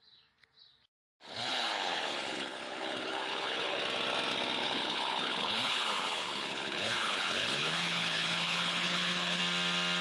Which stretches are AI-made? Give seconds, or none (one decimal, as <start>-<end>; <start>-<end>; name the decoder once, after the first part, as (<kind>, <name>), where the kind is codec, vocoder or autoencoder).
1.3-3.8 (codec, HILCodec); 4.6-9.4